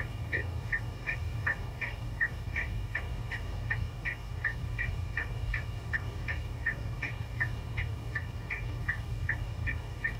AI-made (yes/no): yes